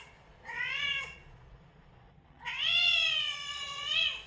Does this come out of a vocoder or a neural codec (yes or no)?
yes